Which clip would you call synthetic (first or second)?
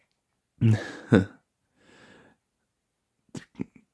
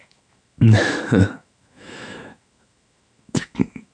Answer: second